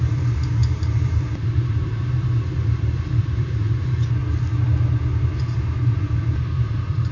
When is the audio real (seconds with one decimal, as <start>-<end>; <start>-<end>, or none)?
4.2-5.4